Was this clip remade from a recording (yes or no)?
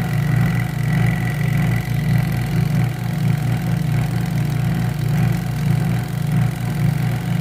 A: no